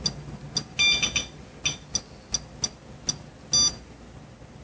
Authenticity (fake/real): real